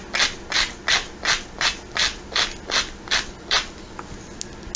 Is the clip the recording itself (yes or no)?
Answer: yes